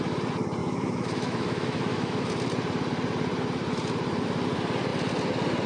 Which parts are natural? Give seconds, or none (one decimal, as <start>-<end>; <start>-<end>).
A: 0.0-0.6; 2.2-5.7